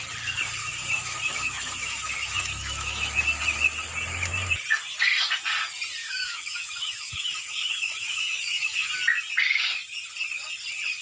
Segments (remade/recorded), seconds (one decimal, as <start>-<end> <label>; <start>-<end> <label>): 0.0-0.6 recorded; 0.6-3.2 remade; 3.2-6.0 recorded; 6.0-8.9 remade; 8.9-11.0 recorded